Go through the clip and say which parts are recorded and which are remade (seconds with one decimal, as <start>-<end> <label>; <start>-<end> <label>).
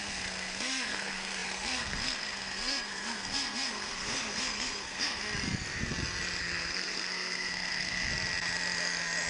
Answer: 0.0-5.2 remade; 5.2-6.4 recorded; 6.4-8.1 remade; 8.1-9.3 recorded